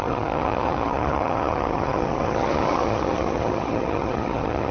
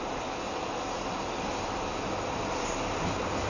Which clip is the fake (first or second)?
first